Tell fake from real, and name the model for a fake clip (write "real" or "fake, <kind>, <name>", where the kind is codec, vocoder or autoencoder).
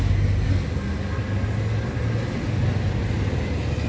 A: real